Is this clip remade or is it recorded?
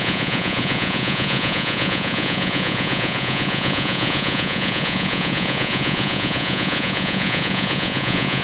remade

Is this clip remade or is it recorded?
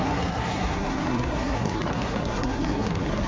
remade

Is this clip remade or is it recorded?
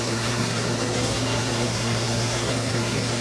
remade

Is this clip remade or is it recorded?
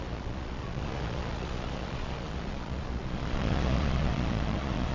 remade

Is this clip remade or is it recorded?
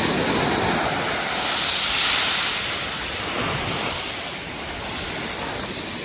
recorded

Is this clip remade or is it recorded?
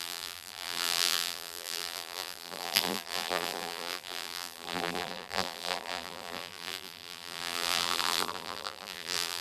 remade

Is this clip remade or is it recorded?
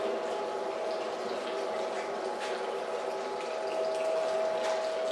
recorded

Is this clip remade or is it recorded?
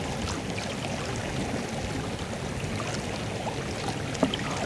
recorded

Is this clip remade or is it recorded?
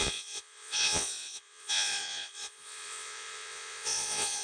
remade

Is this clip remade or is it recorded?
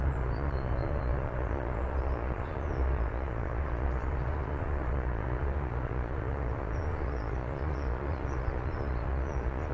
remade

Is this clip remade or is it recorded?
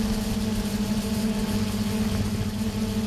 recorded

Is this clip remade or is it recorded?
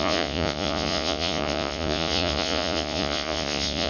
remade